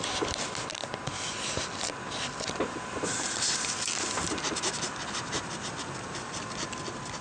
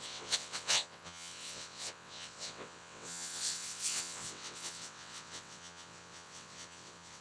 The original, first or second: first